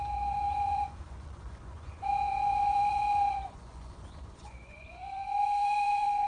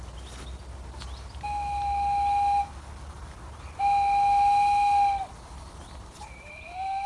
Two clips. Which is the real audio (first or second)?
second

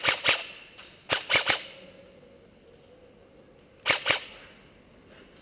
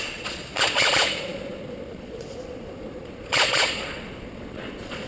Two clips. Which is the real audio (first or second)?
first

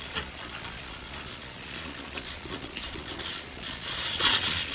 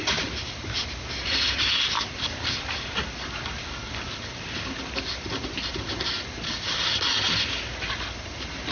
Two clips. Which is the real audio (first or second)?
second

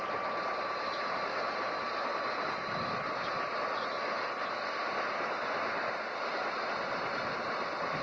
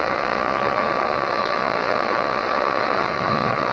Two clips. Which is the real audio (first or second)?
first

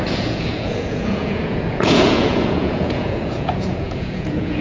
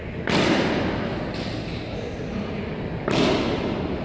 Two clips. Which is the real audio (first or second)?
second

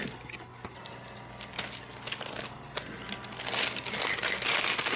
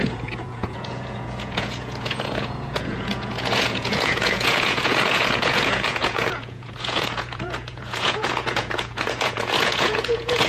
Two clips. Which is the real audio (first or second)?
first